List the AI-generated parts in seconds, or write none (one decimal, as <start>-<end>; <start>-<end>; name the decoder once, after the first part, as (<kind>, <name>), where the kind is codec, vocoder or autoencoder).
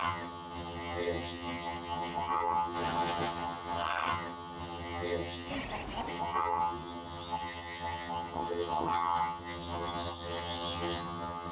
0.0-5.5 (vocoder, HiFi-GAN); 6.1-11.5